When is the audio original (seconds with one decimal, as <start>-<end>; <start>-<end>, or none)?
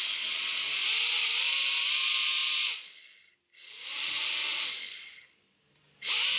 none